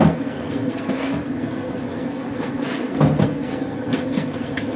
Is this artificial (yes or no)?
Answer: yes